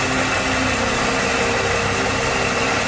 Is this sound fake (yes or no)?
no